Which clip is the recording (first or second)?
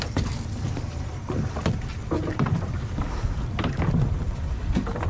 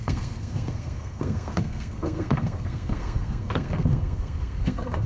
first